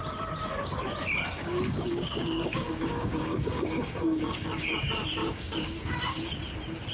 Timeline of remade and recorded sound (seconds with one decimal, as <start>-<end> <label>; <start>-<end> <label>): 0.0-1.4 recorded; 1.4-4.7 remade; 4.7-5.2 recorded; 5.2-6.4 remade; 6.4-6.9 recorded